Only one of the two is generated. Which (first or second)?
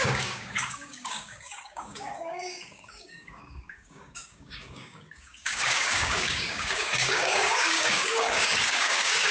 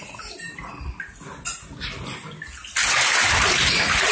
first